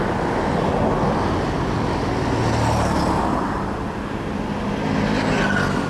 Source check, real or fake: real